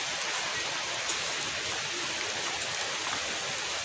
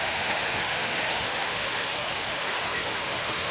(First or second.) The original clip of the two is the first